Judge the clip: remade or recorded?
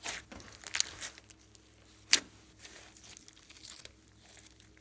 recorded